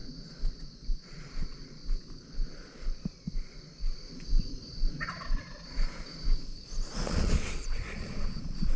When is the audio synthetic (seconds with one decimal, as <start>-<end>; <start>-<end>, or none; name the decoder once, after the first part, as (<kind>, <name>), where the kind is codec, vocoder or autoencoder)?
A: 0.5-1.8 (vocoder, Vocos); 6.9-8.8